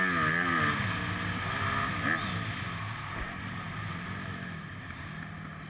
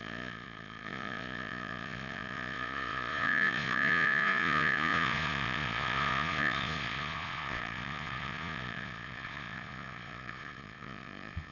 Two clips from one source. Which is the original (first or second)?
first